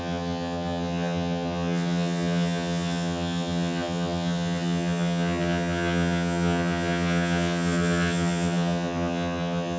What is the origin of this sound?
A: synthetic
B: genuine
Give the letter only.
A